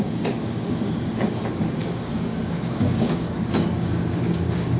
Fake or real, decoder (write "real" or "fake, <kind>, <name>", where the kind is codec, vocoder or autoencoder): fake, codec, DAC